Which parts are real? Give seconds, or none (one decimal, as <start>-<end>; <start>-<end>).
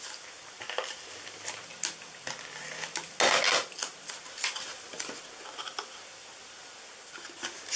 0.0-7.8